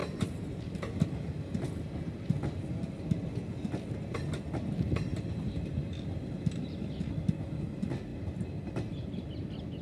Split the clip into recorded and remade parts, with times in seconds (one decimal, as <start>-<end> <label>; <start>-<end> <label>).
0.0-1.0 remade; 1.0-5.1 recorded; 5.1-5.9 remade; 5.9-8.1 recorded; 8.1-9.3 remade; 9.3-9.8 recorded

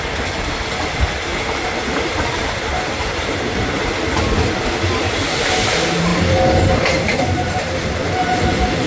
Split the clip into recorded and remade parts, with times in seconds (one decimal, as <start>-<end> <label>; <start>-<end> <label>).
0.0-1.3 recorded; 1.3-4.2 remade; 4.2-8.9 recorded

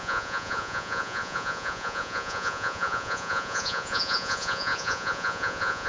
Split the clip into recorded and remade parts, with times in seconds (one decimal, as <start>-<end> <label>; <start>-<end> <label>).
0.0-5.9 remade

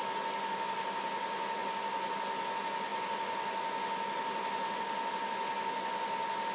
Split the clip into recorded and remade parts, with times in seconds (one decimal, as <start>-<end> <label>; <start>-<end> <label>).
0.0-6.5 recorded

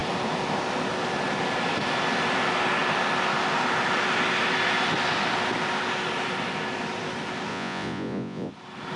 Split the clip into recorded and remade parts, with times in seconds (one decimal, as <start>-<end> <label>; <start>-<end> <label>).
0.0-7.5 recorded; 7.5-8.5 remade; 8.5-9.0 recorded

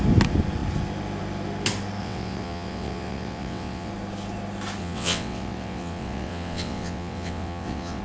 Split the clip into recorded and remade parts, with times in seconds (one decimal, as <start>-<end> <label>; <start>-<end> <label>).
0.0-2.0 recorded; 2.0-3.9 remade; 3.9-4.8 recorded; 4.8-8.0 remade